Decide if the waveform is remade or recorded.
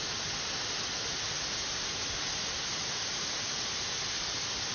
recorded